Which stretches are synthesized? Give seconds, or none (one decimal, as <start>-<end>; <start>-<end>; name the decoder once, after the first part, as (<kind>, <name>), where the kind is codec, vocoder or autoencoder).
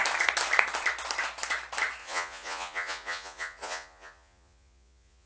2.0-5.3 (vocoder, Vocos)